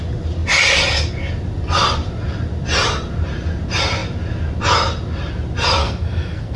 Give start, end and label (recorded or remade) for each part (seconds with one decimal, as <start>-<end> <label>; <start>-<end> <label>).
0.0-5.8 recorded; 5.8-6.6 remade